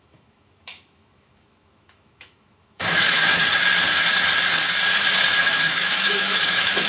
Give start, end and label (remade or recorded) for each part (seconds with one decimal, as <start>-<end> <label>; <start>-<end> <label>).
0.0-3.4 remade; 3.4-5.4 recorded; 5.4-6.9 remade